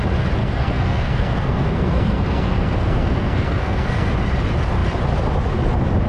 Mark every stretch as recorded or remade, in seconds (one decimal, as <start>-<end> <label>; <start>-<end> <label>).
0.0-0.4 recorded; 0.4-4.1 remade; 4.1-6.1 recorded